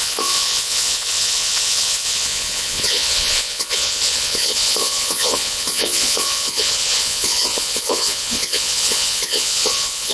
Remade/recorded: remade